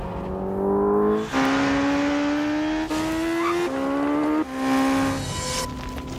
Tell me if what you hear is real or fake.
real